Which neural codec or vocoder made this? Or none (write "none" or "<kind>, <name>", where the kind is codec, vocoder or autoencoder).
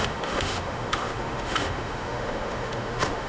autoencoder, DAC-VAE